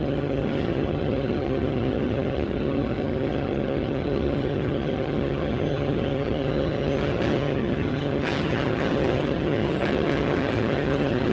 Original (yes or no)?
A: no